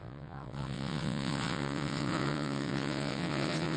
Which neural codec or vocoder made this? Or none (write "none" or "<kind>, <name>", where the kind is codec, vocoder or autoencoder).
vocoder, WaveNeXt